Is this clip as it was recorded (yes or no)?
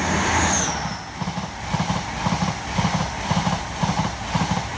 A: yes